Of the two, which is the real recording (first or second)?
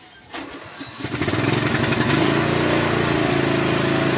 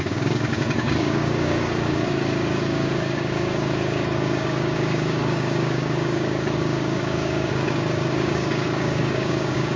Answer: first